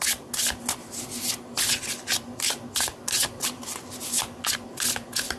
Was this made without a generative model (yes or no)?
yes